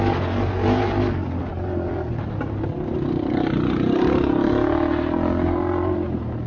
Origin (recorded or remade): recorded